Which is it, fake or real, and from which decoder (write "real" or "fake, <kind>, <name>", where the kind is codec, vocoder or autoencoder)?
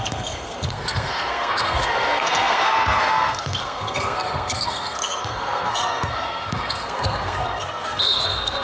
fake, codec, SNAC